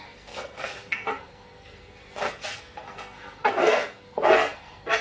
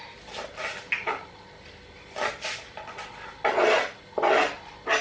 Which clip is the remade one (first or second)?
first